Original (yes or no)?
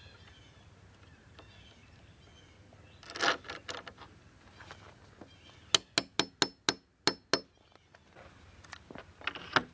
yes